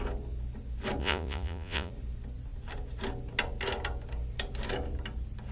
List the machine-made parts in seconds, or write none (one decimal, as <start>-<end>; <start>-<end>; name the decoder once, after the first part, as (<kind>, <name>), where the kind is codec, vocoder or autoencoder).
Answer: 1.0-1.9 (vocoder, Vocos)